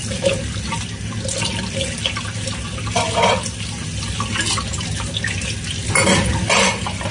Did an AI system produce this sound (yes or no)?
no